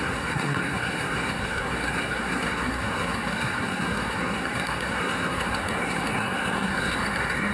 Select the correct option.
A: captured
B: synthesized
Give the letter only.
B